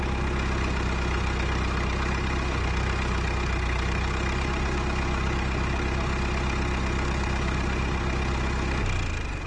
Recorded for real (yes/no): yes